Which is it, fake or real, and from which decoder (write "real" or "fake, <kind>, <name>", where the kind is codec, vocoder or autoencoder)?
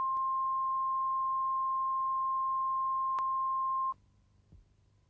real